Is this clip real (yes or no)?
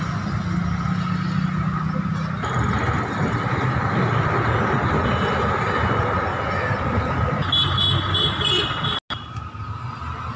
yes